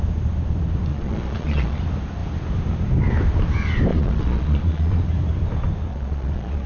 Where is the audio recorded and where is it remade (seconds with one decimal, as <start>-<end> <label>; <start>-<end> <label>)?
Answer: 0.0-0.9 recorded; 0.9-1.8 remade; 1.8-3.9 recorded; 3.9-5.0 remade; 5.0-5.9 recorded; 5.9-6.7 remade